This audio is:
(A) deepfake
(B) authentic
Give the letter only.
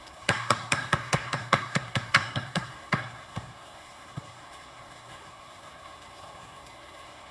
A